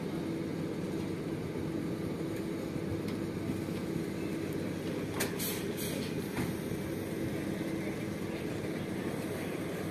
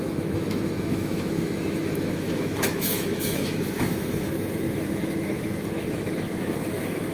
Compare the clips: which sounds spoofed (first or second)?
second